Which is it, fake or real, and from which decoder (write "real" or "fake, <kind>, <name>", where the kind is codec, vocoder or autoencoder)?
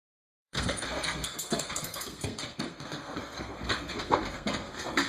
fake, codec, SNAC